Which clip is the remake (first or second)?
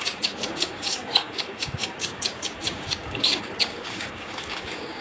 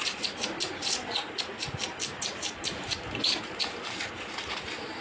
first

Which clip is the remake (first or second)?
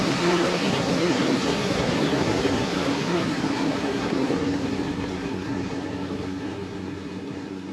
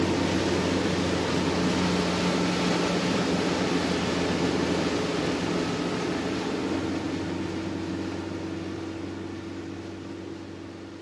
first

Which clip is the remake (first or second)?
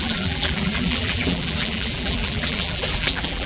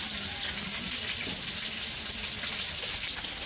first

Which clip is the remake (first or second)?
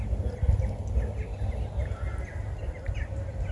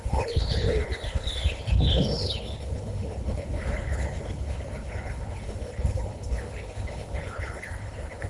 second